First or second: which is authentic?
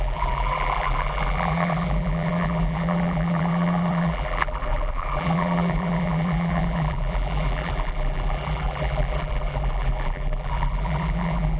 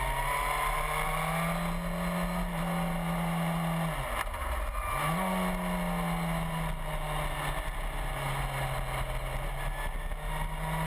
second